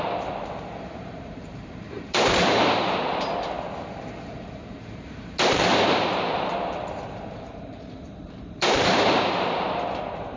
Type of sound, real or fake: fake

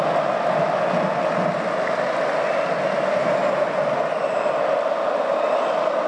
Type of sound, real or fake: real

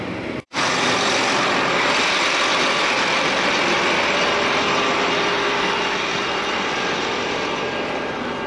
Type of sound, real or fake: fake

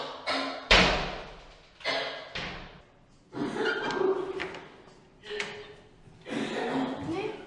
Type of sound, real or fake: real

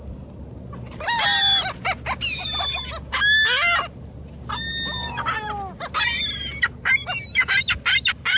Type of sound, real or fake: real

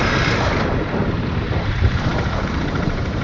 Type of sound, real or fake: fake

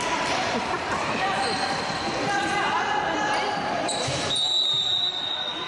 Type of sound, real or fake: fake